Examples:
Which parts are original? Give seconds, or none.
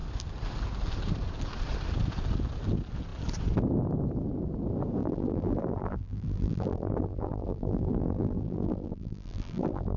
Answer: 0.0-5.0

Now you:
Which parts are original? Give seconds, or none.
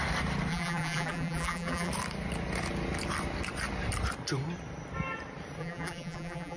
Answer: 0.0-0.5; 1.9-5.6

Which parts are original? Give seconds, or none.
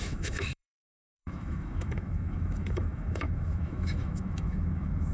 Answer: none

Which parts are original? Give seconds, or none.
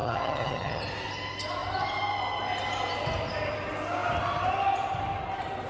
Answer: 0.8-5.7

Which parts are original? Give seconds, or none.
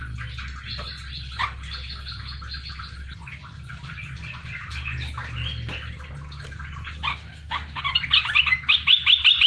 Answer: 0.0-7.1; 7.8-9.5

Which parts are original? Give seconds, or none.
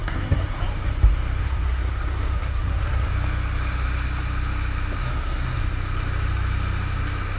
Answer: 0.6-1.4; 3.1-5.0; 5.6-7.4